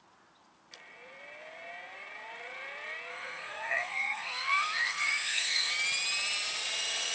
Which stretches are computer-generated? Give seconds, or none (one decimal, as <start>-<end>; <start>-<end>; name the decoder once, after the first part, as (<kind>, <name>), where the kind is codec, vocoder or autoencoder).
3.1-5.7 (codec, SNAC)

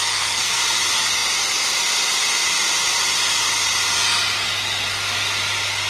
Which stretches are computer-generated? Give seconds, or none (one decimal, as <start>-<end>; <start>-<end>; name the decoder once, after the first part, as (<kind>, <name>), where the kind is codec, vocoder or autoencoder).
0.0-0.6 (codec, SNAC)

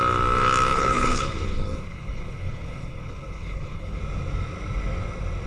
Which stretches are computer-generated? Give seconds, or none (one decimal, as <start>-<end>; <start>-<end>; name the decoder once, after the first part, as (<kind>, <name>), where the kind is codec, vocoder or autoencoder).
0.7-4.0 (codec, HILCodec)